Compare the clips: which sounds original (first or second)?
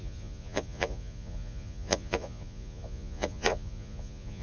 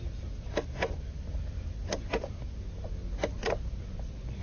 second